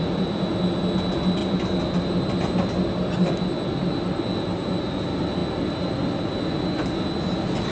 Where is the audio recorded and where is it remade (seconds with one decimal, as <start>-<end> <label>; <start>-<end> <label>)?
0.0-0.5 remade; 0.5-1.4 recorded; 1.4-2.2 remade; 2.2-7.7 recorded